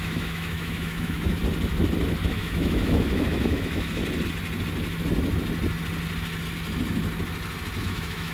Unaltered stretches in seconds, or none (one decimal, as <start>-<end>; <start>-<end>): 1.4-2.3; 4.0-7.8